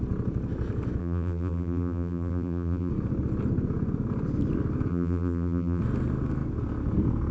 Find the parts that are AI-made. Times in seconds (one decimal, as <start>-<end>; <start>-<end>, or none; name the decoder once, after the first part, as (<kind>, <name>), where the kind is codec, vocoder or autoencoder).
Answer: 1.0-2.9 (vocoder, BigVGAN v2); 4.9-5.8